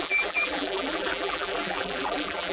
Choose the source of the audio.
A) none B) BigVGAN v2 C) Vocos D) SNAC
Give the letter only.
B